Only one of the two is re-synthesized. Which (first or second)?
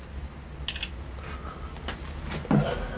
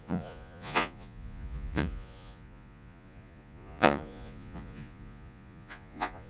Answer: second